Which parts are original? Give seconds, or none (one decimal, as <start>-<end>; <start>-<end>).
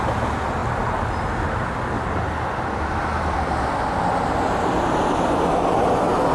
0.0-6.3